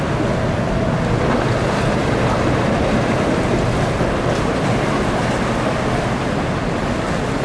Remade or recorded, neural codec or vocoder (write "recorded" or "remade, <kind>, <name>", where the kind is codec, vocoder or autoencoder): recorded